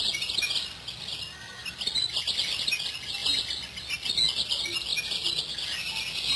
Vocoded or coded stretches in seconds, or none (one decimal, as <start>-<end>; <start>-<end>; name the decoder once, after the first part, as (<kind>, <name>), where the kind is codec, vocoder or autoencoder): 3.2-4.1 (vocoder, BigVGAN v2)